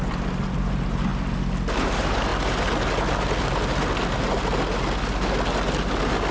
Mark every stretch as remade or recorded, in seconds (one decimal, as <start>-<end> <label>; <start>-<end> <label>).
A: 0.0-1.1 remade; 1.1-1.7 recorded; 1.7-2.3 remade; 2.3-6.3 recorded